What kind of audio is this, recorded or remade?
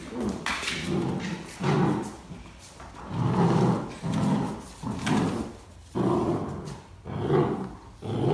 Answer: recorded